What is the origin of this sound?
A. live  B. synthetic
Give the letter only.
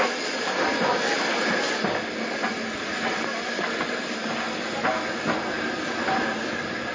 A